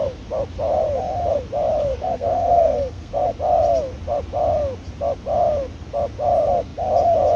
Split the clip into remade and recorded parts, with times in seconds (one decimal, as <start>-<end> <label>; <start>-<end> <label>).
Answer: 0.0-1.9 recorded; 1.9-3.1 remade; 3.1-7.4 recorded